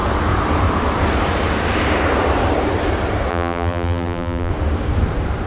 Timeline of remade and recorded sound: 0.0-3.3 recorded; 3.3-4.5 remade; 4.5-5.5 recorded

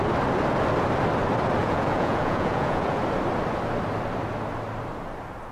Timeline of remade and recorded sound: 0.0-1.6 recorded; 1.6-3.0 remade; 3.0-5.5 recorded

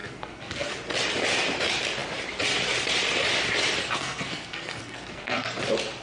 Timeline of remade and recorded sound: 0.0-0.7 remade; 0.7-3.8 recorded; 3.8-5.6 remade; 5.6-6.0 recorded

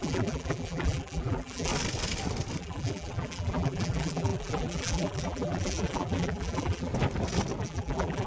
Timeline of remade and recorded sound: 0.0-1.7 remade; 1.7-2.6 recorded; 2.6-6.9 remade; 6.9-7.6 recorded; 7.6-8.3 remade

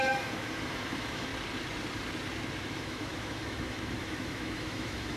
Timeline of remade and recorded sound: 0.0-1.3 remade; 1.3-2.6 recorded; 2.6-5.2 remade

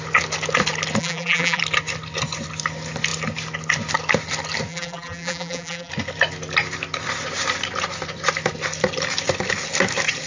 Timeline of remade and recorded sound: 0.0-1.0 recorded; 1.0-1.6 remade; 1.6-4.7 recorded; 4.7-5.9 remade; 5.9-10.3 recorded

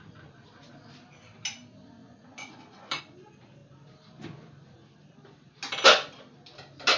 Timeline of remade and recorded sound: 0.0-2.0 recorded; 2.0-3.0 remade; 3.0-7.0 recorded